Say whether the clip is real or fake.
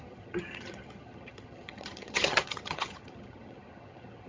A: fake